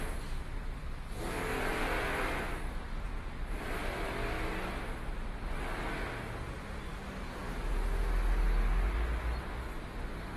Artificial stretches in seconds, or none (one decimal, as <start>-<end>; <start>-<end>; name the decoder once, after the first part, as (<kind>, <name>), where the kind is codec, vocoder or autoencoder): 1.7-4.1 (vocoder, BigVGAN v2); 5.4-6.3